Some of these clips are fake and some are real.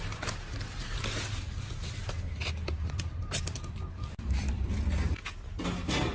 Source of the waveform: real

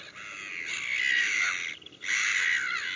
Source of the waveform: real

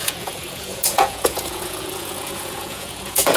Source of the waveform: fake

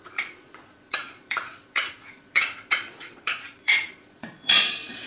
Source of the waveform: fake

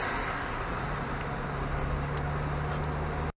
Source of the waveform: real